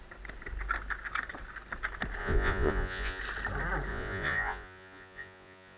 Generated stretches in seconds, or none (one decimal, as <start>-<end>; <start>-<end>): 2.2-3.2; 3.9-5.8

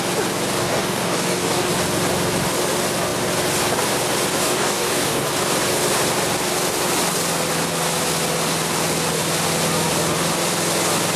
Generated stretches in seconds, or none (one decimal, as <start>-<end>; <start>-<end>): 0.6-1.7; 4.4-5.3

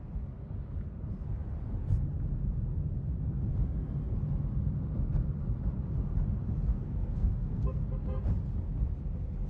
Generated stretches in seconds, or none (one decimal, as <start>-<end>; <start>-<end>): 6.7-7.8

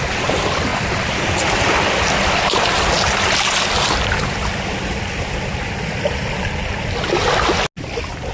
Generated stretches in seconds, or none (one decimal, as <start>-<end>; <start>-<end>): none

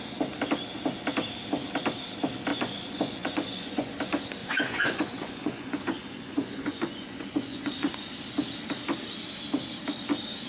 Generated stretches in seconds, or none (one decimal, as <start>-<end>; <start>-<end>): 2.5-3.9; 4.4-8.1

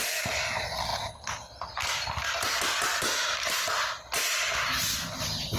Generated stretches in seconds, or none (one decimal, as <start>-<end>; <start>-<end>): none

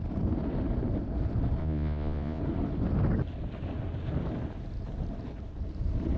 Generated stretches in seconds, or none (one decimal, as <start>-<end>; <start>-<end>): 1.6-2.4

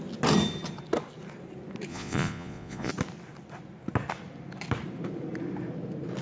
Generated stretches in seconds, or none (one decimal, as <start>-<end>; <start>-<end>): 1.9-2.9